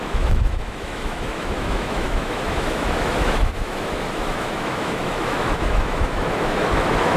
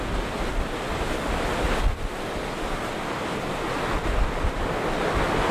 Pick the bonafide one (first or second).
second